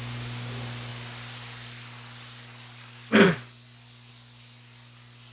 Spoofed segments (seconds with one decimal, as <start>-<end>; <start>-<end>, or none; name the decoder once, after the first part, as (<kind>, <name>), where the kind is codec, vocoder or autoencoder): none

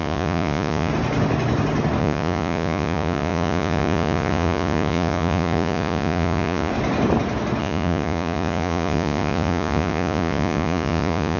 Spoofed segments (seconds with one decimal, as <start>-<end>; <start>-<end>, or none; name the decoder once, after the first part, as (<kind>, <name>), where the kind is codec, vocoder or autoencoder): 0.0-0.9 (vocoder, Vocos); 2.0-6.7; 7.6-11.4

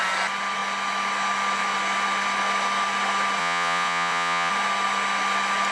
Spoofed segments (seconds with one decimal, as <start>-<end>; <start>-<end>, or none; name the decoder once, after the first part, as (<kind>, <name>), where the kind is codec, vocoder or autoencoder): 3.4-4.5 (vocoder, Vocos)

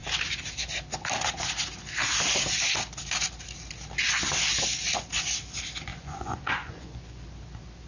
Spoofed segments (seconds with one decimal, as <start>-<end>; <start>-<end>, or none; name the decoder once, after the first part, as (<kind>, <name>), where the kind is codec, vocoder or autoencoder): 5.9-7.2 (vocoder, Vocos)

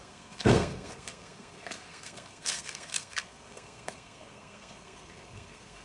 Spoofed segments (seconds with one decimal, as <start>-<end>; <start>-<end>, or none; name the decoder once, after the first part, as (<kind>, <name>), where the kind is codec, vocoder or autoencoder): 0.0-5.8 (codec, SNAC)

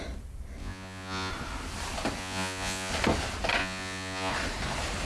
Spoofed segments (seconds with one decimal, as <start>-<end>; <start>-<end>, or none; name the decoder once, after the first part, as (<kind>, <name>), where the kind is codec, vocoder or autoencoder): 0.6-1.3 (vocoder, Vocos); 2.2-2.9; 3.6-4.3